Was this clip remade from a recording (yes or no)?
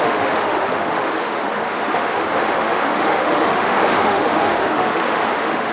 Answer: yes